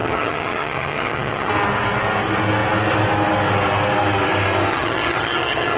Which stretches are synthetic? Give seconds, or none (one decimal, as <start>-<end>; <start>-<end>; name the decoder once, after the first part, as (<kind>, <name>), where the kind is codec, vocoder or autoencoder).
0.0-1.5 (vocoder, HiFi-GAN); 4.7-5.8